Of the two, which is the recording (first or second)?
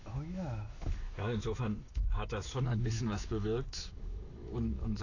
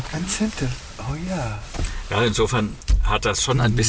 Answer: second